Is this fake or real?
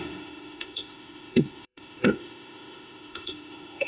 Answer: fake